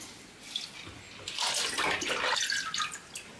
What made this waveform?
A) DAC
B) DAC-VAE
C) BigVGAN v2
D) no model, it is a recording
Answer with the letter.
D